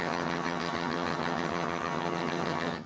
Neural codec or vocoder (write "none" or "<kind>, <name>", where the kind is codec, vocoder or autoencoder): vocoder, HiFi-GAN